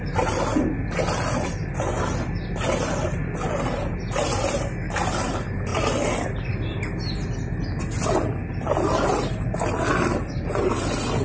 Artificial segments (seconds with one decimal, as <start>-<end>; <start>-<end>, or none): none